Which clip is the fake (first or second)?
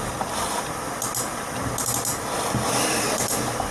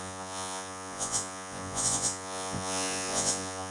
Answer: second